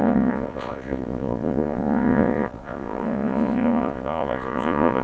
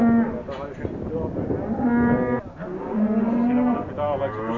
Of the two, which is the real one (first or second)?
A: second